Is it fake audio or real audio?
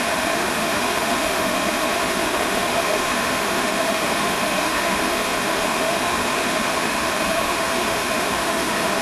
fake